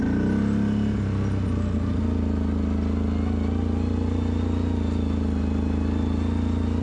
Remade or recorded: recorded